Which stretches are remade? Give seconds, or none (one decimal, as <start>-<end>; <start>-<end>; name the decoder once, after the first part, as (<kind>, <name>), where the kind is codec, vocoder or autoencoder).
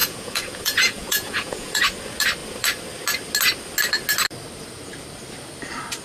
0.0-1.8 (vocoder, Vocos)